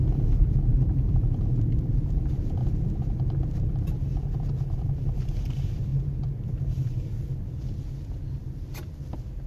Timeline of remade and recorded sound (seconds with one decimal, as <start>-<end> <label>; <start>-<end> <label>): 0.0-2.6 remade; 2.6-3.6 recorded; 3.6-5.9 remade; 5.9-6.6 recorded; 6.6-9.5 remade